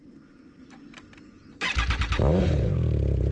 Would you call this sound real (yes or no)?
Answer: yes